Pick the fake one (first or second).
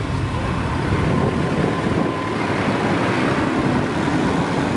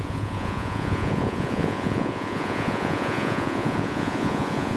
second